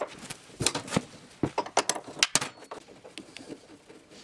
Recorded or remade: recorded